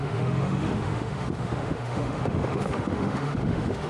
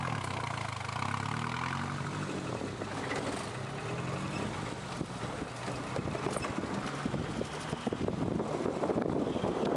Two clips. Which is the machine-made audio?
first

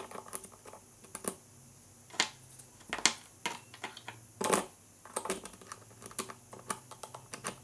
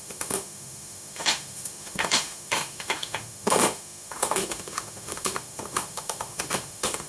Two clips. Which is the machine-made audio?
second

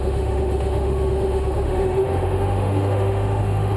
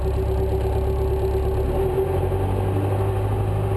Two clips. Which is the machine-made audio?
first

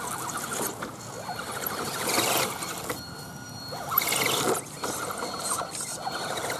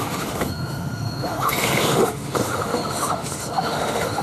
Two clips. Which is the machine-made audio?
second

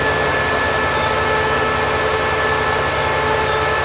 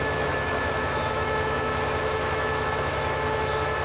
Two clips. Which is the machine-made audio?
second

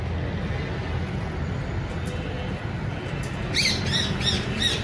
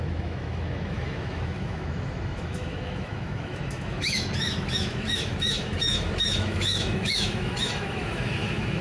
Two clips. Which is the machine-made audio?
second